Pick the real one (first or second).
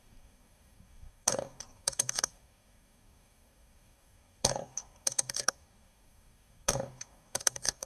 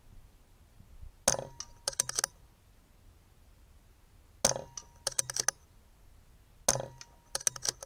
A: second